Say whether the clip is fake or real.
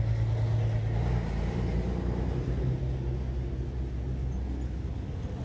real